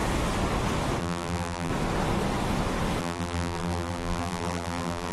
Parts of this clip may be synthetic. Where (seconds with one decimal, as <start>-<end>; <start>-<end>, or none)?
1.0-1.7; 3.0-5.1